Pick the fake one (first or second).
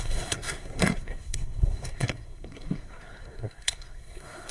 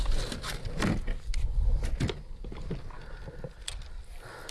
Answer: first